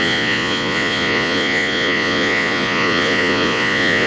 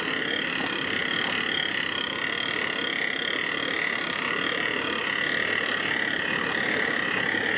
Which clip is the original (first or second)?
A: second